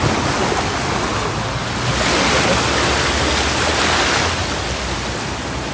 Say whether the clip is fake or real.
real